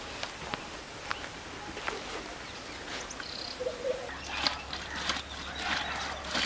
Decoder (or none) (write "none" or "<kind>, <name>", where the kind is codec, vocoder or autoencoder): none